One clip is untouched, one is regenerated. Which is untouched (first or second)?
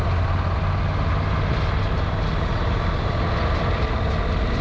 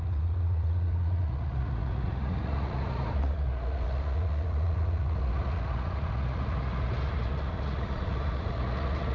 first